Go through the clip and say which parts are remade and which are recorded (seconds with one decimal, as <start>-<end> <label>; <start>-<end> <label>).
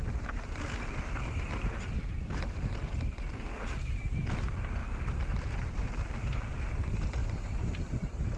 0.0-4.8 recorded; 4.8-5.9 remade; 5.9-7.2 recorded; 7.2-8.4 remade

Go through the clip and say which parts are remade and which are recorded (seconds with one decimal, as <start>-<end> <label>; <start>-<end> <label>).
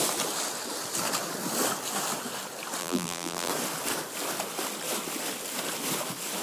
0.0-2.8 recorded; 2.8-3.5 remade; 3.5-6.4 recorded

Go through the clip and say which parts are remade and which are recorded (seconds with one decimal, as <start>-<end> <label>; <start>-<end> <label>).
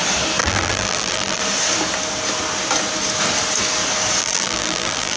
0.0-0.4 recorded; 0.4-1.4 remade; 1.4-4.2 recorded; 4.2-5.2 remade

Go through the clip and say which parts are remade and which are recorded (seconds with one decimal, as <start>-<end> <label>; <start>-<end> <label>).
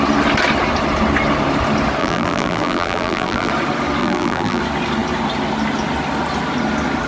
0.0-2.0 recorded; 2.0-3.5 remade; 3.5-4.0 recorded; 4.0-4.6 remade; 4.6-7.1 recorded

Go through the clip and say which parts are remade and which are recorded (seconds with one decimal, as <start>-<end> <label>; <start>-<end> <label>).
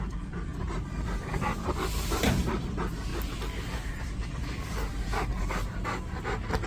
0.0-0.5 recorded; 0.5-2.6 remade; 2.6-4.9 recorded; 4.9-5.6 remade; 5.6-6.7 recorded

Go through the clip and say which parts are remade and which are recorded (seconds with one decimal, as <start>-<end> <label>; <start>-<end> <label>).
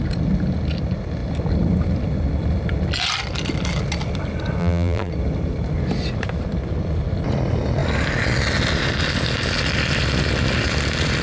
0.0-4.6 recorded; 4.6-5.1 remade; 5.1-11.2 recorded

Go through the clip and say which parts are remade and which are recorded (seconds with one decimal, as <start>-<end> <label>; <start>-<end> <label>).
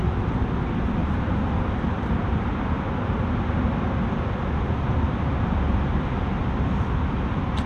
0.0-1.0 recorded; 1.0-2.5 remade; 2.5-7.7 recorded